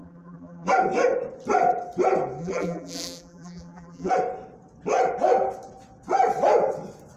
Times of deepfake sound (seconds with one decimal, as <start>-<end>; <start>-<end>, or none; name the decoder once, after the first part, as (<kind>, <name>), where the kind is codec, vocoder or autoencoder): 0.0-0.7 (vocoder, BigVGAN v2); 2.4-4.1